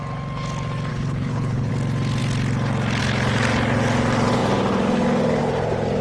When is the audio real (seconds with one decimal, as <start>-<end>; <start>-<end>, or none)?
0.0-0.9; 1.7-6.0